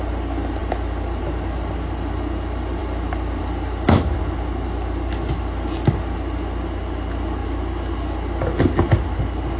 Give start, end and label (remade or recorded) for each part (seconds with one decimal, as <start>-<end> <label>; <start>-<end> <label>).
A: 0.0-9.6 recorded